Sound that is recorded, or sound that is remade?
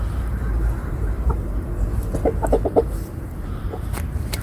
recorded